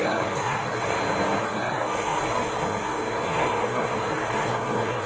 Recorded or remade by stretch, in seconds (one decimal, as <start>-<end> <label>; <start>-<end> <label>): 0.0-0.9 remade; 0.9-1.4 recorded; 1.4-5.1 remade